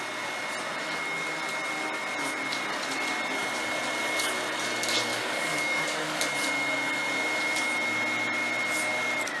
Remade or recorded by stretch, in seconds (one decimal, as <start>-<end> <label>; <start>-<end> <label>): 0.0-5.1 recorded; 5.1-6.2 remade; 6.2-9.4 recorded